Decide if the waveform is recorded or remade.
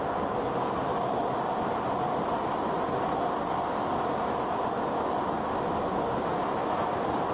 recorded